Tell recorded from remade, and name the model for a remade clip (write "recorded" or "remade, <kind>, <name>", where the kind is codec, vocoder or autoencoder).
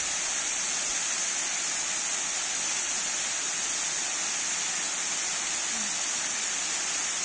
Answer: recorded